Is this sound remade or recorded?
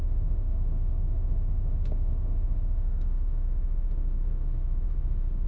remade